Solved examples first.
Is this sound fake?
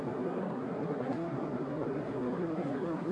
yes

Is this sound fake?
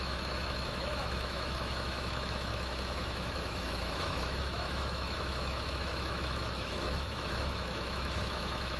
yes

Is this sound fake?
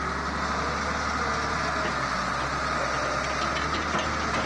no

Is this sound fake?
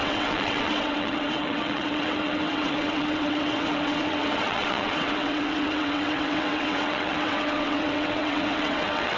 yes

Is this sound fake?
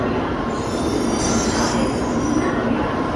no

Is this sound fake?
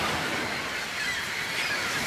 yes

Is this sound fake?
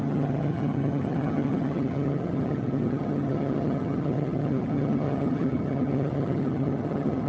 yes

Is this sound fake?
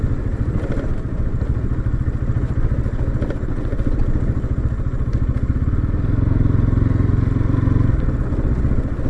no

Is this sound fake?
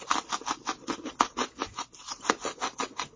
no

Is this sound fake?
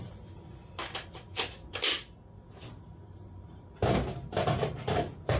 no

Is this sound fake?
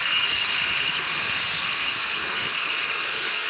yes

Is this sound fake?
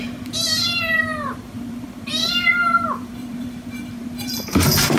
yes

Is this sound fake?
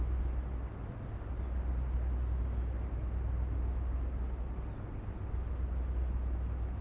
no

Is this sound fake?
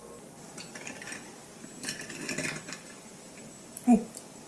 no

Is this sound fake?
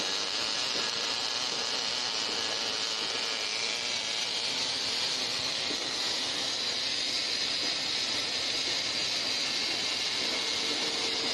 no